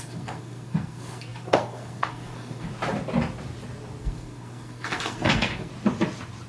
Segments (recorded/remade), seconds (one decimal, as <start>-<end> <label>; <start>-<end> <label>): 0.0-2.7 remade; 2.7-4.0 recorded; 4.0-5.7 remade; 5.7-6.5 recorded